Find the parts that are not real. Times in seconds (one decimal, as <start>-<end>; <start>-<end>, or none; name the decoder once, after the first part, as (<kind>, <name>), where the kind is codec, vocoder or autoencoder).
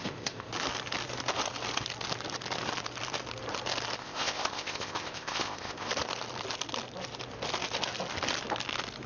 0.0-0.5 (codec, ZipCodec); 4.0-5.9